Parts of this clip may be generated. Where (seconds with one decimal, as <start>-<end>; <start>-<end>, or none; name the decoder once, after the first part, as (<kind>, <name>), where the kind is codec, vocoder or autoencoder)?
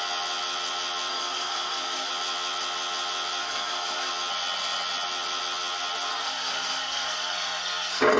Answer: 1.1-2.1 (codec, SNAC); 3.4-4.1; 6.1-8.2